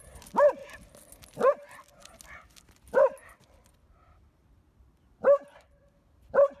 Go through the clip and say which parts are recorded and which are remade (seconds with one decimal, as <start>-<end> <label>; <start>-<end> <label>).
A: 0.0-6.6 recorded